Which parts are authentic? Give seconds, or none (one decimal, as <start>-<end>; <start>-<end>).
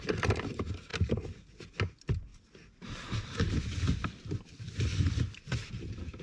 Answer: 0.0-6.2